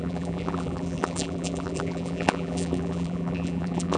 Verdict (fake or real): fake